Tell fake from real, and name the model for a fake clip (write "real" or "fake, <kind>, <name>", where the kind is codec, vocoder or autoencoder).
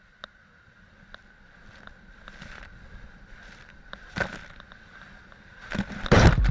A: real